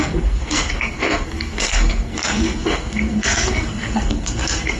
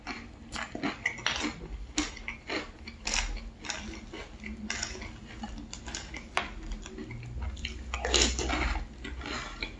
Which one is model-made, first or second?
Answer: first